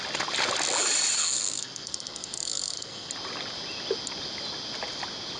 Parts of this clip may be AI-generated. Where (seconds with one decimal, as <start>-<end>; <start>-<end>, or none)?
1.2-3.1